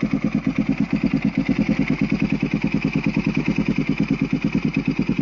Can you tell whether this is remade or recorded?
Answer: recorded